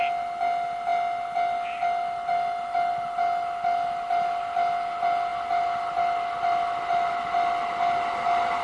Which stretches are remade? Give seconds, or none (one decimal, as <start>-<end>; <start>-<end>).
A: none